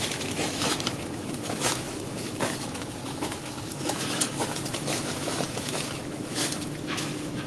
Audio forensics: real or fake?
fake